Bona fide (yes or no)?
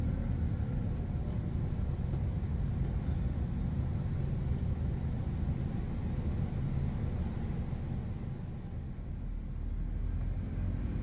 yes